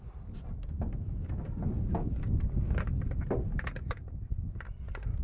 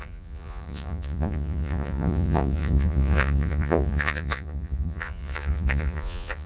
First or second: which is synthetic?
second